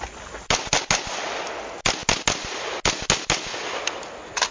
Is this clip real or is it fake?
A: real